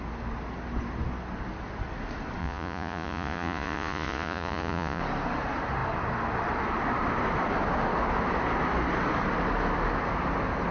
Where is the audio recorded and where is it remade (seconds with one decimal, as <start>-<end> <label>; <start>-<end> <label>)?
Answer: 0.0-2.4 recorded; 2.4-5.0 remade; 5.0-10.7 recorded